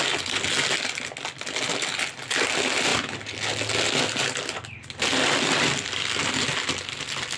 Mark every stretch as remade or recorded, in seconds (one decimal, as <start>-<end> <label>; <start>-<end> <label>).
0.0-7.4 recorded